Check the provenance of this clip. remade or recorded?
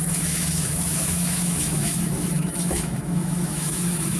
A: remade